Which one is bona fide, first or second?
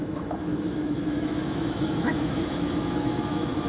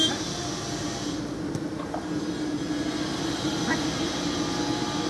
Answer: second